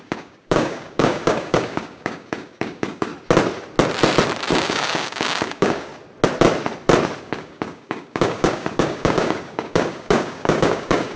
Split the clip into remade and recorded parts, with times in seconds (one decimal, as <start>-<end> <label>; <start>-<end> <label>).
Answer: 0.0-3.1 remade; 3.1-4.5 recorded; 4.5-5.9 remade; 5.9-7.2 recorded; 7.2-11.2 remade